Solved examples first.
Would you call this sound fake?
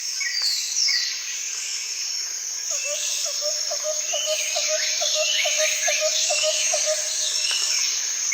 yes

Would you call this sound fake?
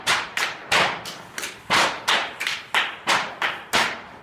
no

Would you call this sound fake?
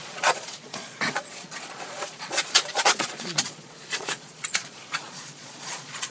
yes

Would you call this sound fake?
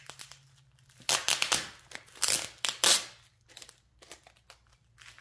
no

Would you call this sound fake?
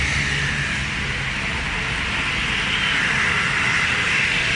no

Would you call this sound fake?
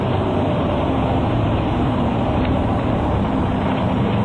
yes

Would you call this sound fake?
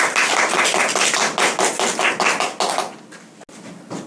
no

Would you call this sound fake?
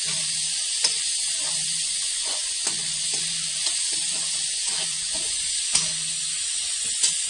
yes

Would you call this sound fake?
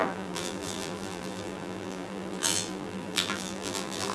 yes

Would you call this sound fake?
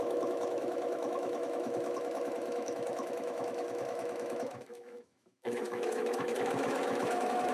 yes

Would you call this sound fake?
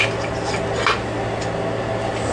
no